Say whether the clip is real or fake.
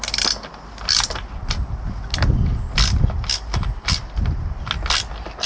real